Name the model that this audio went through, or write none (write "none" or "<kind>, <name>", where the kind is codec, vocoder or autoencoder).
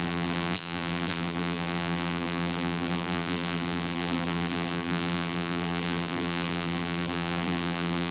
vocoder, BigVGAN v2